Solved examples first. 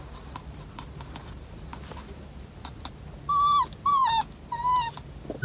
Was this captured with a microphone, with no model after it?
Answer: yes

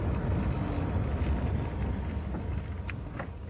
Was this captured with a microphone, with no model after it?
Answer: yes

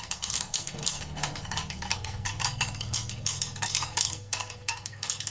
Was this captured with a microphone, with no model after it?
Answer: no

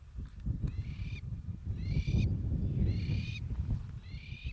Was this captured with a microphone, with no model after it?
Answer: yes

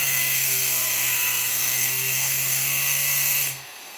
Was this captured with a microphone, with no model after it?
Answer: no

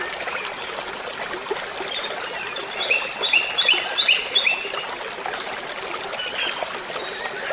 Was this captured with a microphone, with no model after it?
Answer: yes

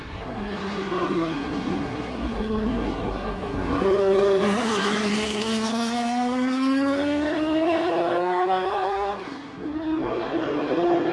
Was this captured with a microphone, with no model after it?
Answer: no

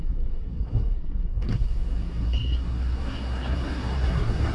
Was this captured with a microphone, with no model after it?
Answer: no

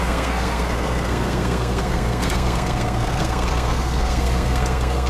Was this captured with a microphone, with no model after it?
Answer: no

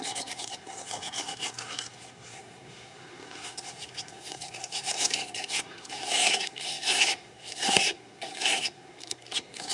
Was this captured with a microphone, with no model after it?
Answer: no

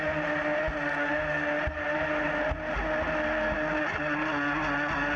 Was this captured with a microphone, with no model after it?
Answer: yes